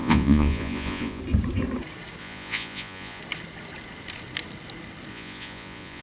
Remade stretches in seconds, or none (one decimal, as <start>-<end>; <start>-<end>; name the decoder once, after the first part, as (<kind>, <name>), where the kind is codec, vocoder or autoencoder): 0.0-1.2 (vocoder, Vocos); 2.2-3.2; 5.1-6.0